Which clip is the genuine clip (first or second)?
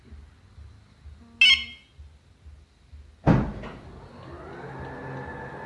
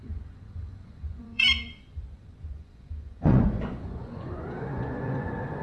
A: first